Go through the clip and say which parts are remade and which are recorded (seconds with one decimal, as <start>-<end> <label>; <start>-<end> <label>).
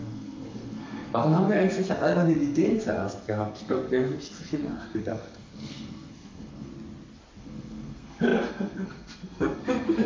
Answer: 0.0-6.7 remade; 6.7-7.4 recorded; 7.4-10.1 remade